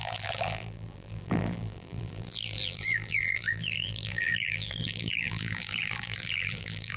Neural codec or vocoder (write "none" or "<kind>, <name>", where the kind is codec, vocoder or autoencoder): vocoder, BigVGAN v2